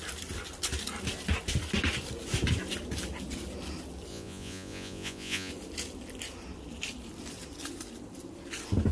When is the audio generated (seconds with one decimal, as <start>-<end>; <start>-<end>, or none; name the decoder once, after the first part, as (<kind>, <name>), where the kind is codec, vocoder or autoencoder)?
4.1-5.5 (vocoder, Vocos)